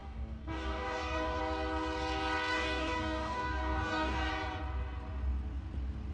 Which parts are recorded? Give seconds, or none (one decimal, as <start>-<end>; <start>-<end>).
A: 1.4-2.5; 4.3-6.1